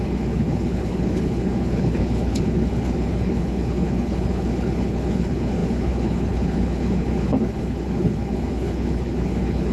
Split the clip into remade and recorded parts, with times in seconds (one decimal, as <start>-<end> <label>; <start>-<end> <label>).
0.0-9.7 remade